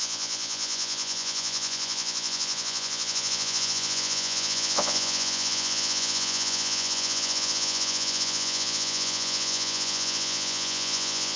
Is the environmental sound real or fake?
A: fake